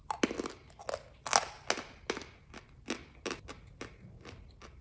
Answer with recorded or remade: recorded